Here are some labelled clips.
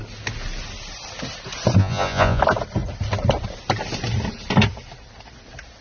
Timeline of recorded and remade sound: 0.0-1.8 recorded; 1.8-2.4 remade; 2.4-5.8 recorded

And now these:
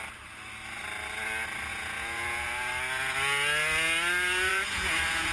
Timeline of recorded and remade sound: 0.0-1.7 recorded; 1.7-2.7 remade; 2.7-4.5 recorded; 4.5-5.3 remade